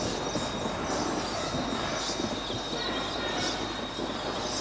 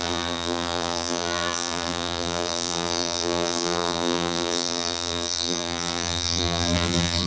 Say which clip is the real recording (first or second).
first